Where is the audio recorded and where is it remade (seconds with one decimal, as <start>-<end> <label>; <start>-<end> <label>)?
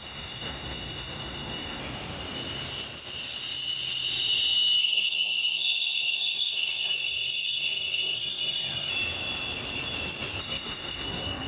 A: 0.0-1.8 remade; 1.8-4.8 recorded; 4.8-8.9 remade; 8.9-10.4 recorded; 10.4-11.5 remade